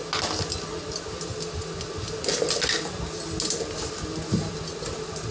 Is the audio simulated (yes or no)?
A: no